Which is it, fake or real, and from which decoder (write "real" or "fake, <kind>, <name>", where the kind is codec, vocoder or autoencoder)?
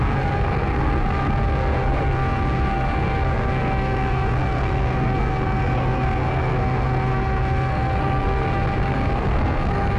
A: fake, codec, SNAC